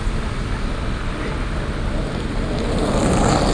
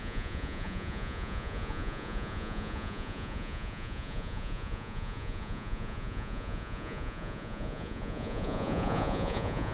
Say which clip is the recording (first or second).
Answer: first